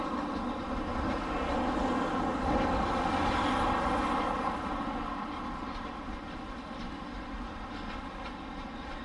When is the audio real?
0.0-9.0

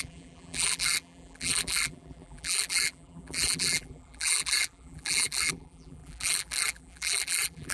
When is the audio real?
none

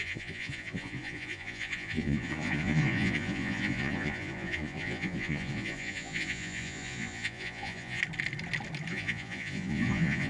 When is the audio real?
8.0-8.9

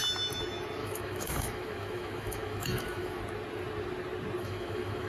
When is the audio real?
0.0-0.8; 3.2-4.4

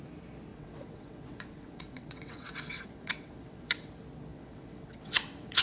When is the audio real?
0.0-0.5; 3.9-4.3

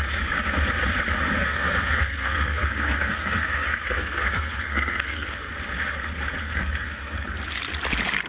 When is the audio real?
0.0-1.4; 5.4-6.4; 7.3-8.3